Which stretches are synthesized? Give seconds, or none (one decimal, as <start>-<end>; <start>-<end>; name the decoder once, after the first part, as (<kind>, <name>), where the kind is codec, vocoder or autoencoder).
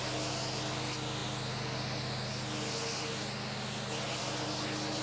none